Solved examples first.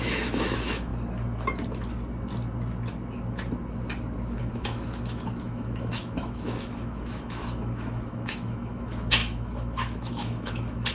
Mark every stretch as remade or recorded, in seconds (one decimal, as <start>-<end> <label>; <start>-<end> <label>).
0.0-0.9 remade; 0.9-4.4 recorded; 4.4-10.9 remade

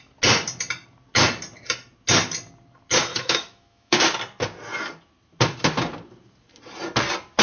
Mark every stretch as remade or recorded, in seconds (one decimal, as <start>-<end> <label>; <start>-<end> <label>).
0.0-3.1 recorded; 3.1-4.0 remade; 4.0-7.4 recorded

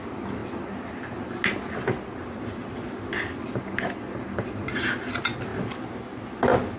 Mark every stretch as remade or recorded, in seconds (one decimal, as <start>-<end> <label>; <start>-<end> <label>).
0.0-6.8 recorded

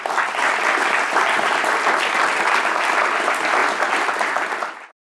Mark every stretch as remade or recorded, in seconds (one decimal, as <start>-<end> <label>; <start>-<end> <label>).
0.0-5.1 recorded